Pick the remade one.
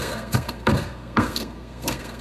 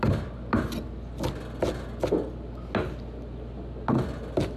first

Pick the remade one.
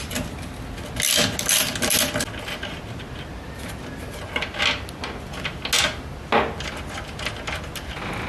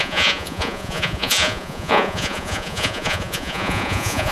second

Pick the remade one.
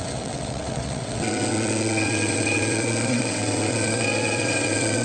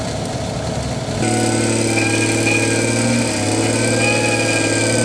first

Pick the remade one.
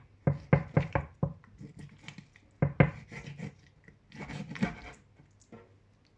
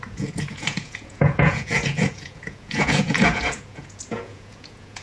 second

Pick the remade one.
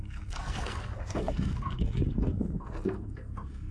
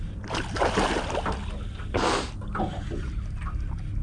first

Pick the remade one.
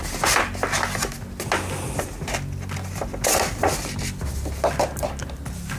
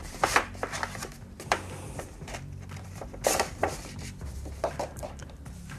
second